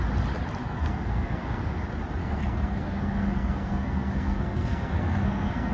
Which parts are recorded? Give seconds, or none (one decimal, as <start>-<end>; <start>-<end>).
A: 0.0-0.6; 1.8-2.2